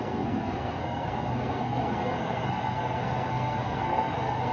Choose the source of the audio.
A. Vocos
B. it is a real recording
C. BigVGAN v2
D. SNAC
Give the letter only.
D